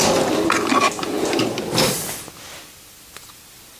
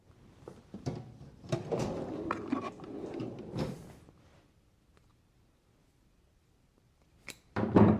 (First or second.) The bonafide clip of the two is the first